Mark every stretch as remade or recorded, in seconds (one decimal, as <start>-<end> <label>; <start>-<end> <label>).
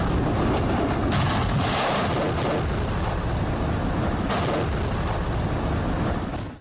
0.0-6.6 recorded